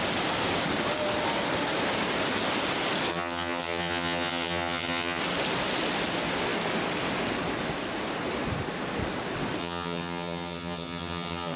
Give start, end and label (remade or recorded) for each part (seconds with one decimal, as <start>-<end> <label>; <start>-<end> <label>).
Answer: 0.0-3.1 recorded; 3.1-5.2 remade; 5.2-9.6 recorded; 9.6-11.6 remade